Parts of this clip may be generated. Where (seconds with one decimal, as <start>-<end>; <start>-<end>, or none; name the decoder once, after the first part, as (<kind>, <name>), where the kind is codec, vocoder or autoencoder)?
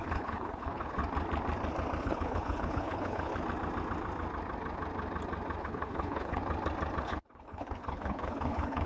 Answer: 0.0-1.0 (codec, HILCodec); 2.0-3.3; 5.6-6.4; 7.0-8.9